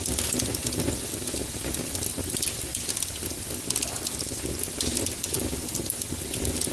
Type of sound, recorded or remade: recorded